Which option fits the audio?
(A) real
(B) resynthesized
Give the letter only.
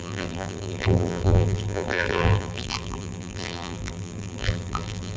B